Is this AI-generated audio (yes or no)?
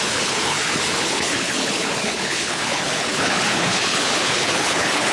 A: yes